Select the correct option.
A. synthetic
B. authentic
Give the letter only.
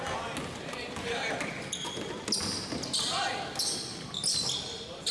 B